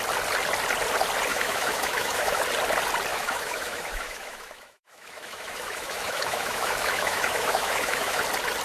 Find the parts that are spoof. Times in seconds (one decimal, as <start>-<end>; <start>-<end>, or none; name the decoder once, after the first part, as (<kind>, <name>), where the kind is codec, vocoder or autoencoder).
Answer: 1.3-2.4 (autoencoder, DAC-VAE); 3.1-8.2

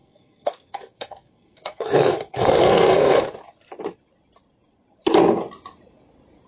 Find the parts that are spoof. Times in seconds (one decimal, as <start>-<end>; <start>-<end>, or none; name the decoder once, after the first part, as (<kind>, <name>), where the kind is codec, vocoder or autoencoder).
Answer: 0.0-3.2 (codec, SNAC)

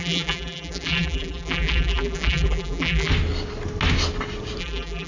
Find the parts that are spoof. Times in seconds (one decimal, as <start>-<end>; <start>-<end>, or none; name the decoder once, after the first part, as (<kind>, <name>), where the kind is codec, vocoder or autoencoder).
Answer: 0.0-3.1 (vocoder, BigVGAN v2); 4.6-5.1

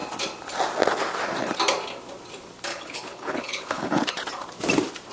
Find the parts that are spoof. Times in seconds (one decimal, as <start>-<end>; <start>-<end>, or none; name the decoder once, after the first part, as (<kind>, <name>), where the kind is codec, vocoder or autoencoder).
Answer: 2.7-4.0 (codec, HILCodec)

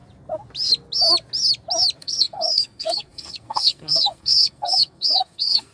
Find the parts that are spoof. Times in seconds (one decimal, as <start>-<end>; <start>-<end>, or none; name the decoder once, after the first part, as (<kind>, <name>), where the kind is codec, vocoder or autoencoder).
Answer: 2.0-5.7 (codec, SNAC)

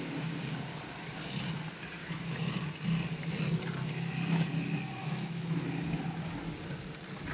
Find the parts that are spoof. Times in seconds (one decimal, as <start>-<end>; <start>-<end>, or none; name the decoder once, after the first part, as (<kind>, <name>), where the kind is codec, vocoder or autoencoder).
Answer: 2.0-2.5 (autoencoder, DAC-VAE); 5.0-5.6

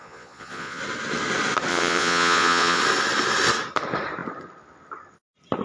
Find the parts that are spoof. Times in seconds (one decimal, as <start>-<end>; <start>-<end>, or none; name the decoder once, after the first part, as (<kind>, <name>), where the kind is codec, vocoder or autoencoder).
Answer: 0.0-0.8 (vocoder, Vocos); 1.7-2.8